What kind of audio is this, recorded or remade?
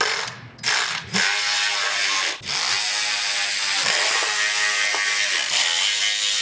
recorded